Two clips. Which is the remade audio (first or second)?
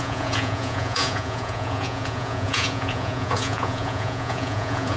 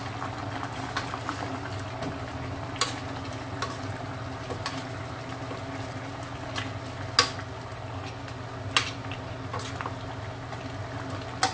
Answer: first